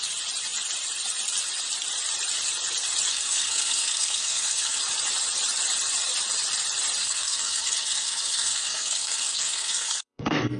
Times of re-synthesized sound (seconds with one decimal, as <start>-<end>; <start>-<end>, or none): 3.1-4.8; 7.0-10.6

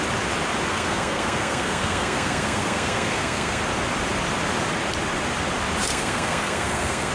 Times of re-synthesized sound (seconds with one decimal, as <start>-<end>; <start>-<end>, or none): 0.7-3.6; 5.9-7.1

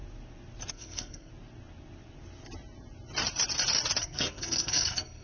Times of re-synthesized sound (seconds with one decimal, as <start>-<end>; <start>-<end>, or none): 0.7-1.3; 4.0-5.2